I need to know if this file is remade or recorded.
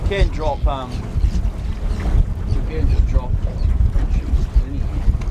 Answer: recorded